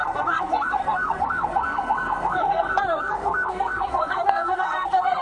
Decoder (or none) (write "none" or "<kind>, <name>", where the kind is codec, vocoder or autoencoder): codec, SNAC